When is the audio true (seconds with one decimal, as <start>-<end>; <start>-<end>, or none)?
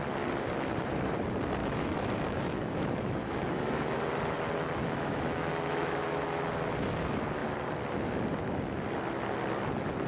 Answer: 0.0-1.6; 4.0-4.8; 6.4-10.1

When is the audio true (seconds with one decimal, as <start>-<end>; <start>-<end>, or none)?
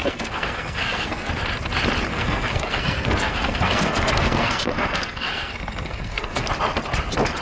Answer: 1.3-2.1; 6.5-7.4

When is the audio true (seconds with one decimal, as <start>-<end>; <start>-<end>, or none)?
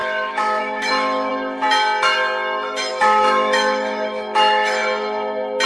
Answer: 1.3-2.9; 4.8-5.7